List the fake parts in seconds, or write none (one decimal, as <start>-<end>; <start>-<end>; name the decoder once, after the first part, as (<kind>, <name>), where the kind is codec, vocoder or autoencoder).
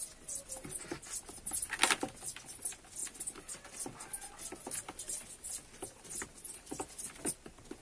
none